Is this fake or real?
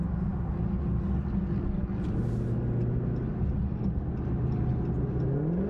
real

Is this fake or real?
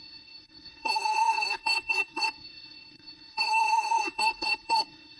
fake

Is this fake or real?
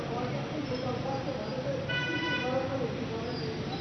real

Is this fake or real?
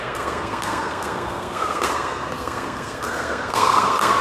fake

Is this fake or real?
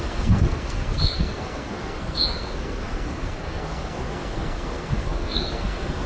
fake